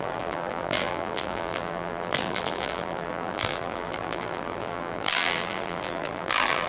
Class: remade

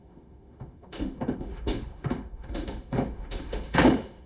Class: remade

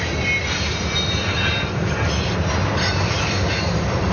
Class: recorded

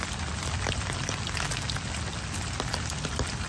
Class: recorded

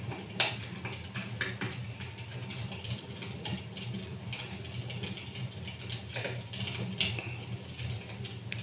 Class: recorded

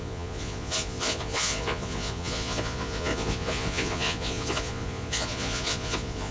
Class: remade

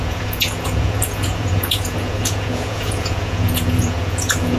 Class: remade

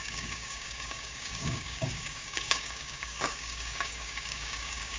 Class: remade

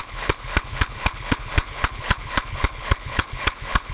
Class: remade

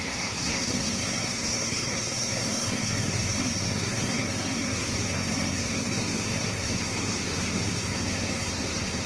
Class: remade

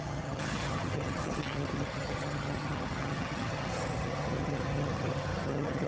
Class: remade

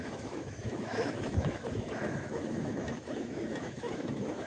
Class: remade